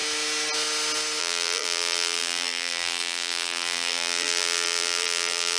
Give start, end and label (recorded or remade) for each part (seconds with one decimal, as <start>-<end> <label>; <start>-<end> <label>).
0.0-1.2 recorded; 1.2-5.6 remade